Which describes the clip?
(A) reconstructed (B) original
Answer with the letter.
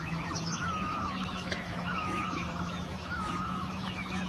A